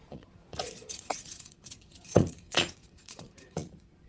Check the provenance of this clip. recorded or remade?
remade